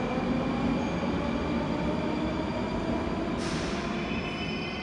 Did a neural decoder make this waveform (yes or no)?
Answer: no